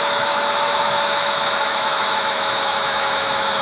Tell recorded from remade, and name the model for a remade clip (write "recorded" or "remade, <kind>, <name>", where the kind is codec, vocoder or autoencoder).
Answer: remade, autoencoder, DAC-VAE